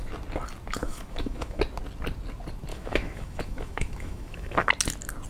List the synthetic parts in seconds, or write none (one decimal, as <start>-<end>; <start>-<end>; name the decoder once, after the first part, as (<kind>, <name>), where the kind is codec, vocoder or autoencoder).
0.8-1.6 (autoencoder, DAC-VAE); 2.7-4.7